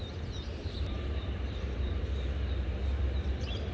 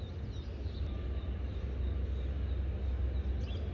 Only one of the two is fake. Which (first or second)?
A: first